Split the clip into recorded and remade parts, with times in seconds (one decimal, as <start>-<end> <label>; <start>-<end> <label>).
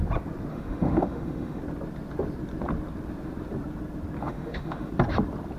0.0-0.5 recorded; 0.5-1.6 remade; 1.6-4.2 recorded; 4.2-4.9 remade; 4.9-5.6 recorded